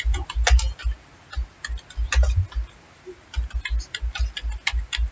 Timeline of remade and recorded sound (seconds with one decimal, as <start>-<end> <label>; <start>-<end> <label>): 0.0-5.1 recorded